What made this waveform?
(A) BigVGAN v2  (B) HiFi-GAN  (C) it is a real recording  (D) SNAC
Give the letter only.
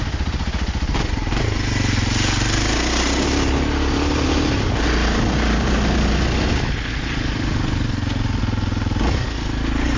C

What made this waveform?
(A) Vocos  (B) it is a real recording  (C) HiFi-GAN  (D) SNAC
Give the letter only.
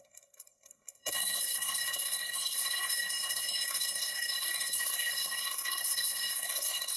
D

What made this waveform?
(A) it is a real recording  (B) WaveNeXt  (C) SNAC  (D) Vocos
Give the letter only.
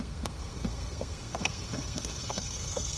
C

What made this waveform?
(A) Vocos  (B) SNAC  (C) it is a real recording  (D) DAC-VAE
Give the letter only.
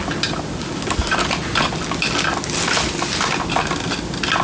C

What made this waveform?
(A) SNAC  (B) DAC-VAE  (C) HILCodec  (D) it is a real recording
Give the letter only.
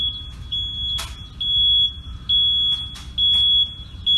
D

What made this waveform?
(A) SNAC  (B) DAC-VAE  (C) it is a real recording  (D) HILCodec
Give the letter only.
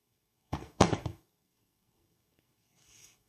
A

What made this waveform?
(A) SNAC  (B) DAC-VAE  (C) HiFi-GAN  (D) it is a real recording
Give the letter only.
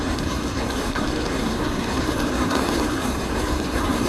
A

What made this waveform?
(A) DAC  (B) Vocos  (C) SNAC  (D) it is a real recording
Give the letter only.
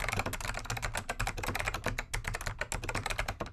D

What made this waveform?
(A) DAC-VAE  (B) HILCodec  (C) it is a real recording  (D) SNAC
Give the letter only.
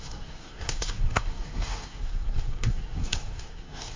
D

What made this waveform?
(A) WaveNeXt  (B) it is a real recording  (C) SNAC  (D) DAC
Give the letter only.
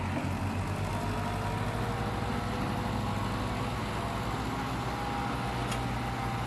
B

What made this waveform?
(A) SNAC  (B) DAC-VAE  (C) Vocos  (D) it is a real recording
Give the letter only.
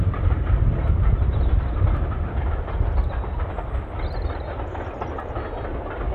D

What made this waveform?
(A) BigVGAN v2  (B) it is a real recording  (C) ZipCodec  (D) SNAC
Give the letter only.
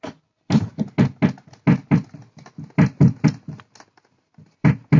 B